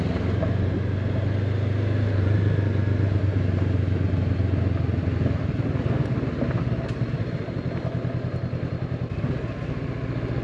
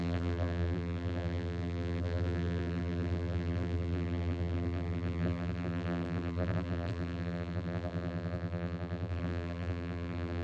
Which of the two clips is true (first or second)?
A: first